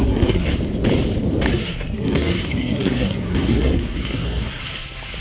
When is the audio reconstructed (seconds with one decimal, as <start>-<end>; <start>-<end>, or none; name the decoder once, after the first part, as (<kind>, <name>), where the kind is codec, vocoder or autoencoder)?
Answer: 0.0-0.5 (codec, SNAC); 1.5-4.6